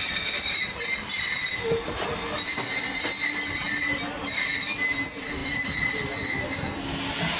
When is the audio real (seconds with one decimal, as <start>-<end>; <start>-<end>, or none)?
0.0-7.4